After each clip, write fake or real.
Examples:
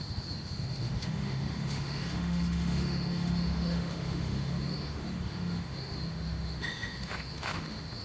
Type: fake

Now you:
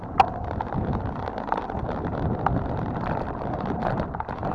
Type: fake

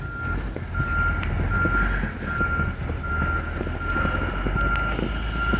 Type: real